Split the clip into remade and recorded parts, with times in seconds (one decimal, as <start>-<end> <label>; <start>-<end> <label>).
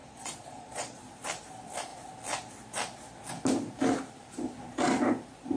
0.0-1.0 remade; 1.0-5.6 recorded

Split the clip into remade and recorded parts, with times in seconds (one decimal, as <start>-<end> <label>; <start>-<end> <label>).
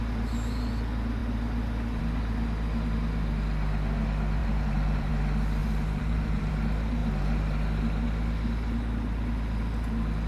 0.0-4.4 recorded; 4.4-5.1 remade; 5.1-5.6 recorded; 5.6-6.5 remade; 6.5-10.3 recorded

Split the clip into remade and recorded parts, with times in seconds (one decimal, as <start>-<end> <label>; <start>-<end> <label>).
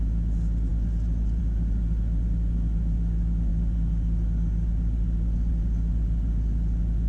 0.0-7.1 recorded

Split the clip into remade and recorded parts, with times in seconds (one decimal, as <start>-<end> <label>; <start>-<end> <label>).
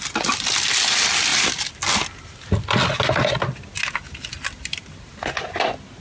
0.0-6.0 recorded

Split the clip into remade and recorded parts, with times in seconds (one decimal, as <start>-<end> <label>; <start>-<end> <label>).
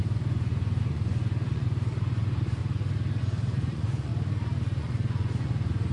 0.0-2.6 remade; 2.6-3.2 recorded; 3.2-4.1 remade; 4.1-4.8 recorded; 4.8-5.9 remade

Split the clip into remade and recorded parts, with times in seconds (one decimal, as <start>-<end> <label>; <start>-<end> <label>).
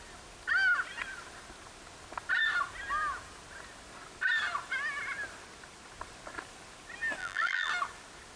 0.0-7.2 recorded; 7.2-7.7 remade; 7.7-8.4 recorded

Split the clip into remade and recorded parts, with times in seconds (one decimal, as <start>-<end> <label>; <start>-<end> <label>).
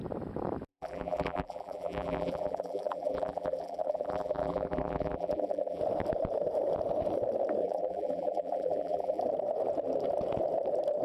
0.0-0.7 recorded; 0.7-5.8 remade; 5.8-7.6 recorded; 7.6-9.2 remade; 9.2-11.0 recorded